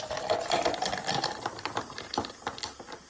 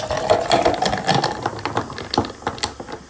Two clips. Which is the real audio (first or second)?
second